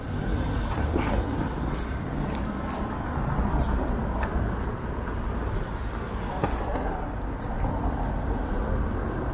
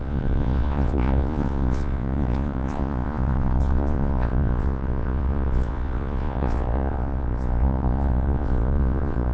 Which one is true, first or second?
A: first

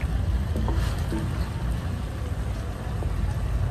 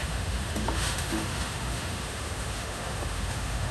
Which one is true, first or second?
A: first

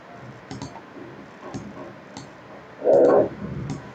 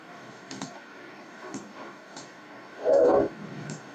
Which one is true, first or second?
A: first